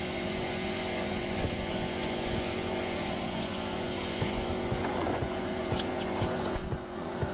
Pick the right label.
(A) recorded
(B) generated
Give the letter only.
B